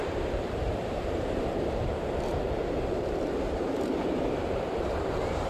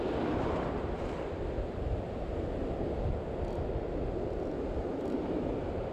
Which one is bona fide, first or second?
second